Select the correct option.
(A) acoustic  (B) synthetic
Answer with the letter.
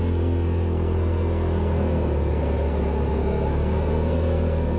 B